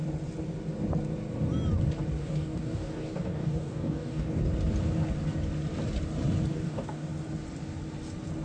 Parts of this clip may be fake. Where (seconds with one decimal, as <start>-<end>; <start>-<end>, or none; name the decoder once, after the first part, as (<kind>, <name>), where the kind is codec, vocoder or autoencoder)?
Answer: 2.2-4.4 (codec, DAC); 6.5-7.1